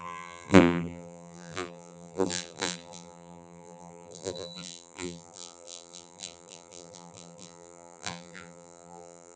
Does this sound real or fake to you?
fake